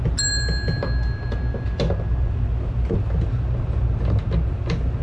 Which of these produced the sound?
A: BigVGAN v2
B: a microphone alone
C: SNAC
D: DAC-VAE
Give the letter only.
B